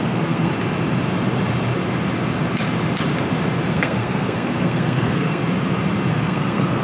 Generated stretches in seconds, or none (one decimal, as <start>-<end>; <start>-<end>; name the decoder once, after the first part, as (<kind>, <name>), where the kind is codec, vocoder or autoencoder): 0.0-0.5 (codec, SNAC); 3.7-5.4; 6.1-6.8

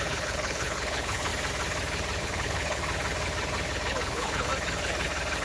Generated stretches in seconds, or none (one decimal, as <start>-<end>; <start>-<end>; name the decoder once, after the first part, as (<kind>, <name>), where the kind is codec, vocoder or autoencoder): 0.0-1.3 (codec, HILCodec); 2.2-2.8; 3.9-4.5